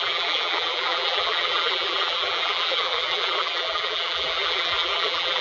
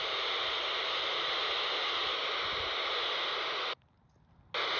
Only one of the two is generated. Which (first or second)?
first